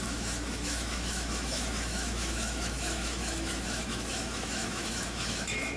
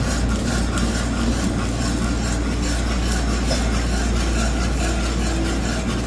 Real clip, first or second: second